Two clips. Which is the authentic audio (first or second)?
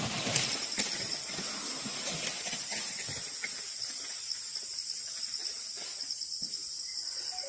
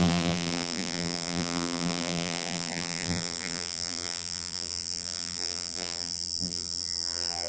first